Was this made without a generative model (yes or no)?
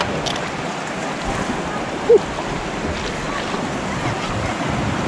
yes